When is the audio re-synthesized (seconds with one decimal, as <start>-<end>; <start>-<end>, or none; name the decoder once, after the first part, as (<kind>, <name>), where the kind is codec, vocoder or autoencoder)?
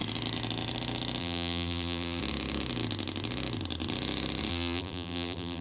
1.2-2.2 (vocoder, BigVGAN v2); 4.5-5.6